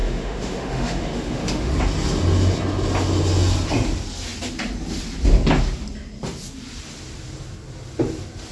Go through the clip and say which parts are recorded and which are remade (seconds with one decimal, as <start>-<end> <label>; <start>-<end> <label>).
0.0-1.7 remade; 1.7-8.5 recorded